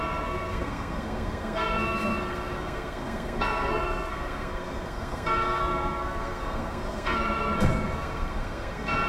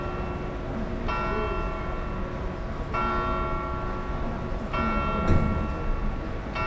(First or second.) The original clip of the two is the second